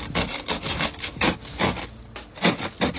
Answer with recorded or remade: recorded